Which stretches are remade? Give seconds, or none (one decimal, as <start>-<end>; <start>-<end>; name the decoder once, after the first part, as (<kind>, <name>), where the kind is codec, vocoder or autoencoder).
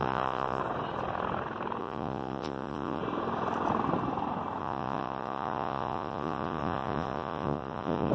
0.0-0.6 (vocoder, Vocos); 1.8-3.0; 4.6-8.1